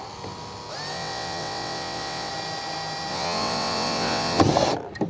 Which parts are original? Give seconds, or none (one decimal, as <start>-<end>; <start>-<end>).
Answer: 0.0-0.9; 2.3-3.1; 4.4-5.1